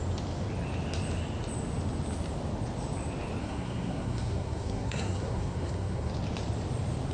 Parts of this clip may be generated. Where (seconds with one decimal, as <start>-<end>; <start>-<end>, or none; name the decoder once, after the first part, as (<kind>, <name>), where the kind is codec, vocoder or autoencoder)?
3.4-6.1 (codec, SNAC)